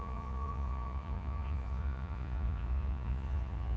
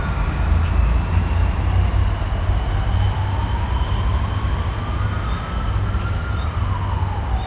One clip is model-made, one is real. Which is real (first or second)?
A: second